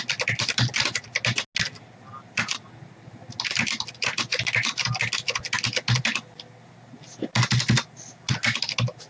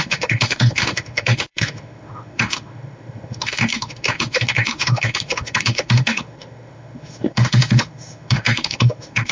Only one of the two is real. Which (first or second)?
first